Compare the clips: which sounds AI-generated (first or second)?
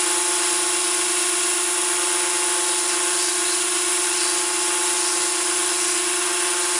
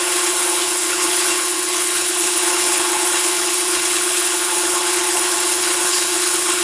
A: second